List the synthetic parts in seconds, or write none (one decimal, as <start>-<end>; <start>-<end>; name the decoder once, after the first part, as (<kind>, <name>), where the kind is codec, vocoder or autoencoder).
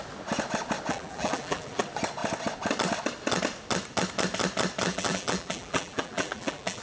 0.9-1.8 (vocoder, BigVGAN v2); 4.9-6.8